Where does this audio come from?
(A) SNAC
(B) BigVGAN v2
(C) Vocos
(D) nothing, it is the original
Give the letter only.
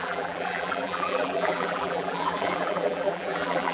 B